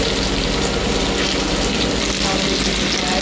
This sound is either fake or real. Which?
real